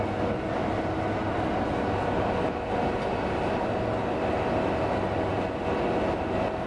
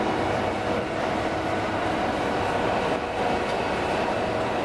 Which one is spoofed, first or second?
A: second